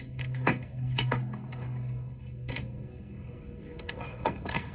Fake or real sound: fake